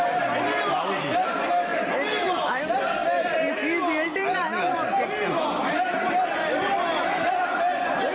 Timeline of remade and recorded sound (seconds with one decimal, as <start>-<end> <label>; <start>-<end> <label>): 0.0-8.1 recorded